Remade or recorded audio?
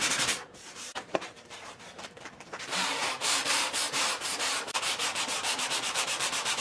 remade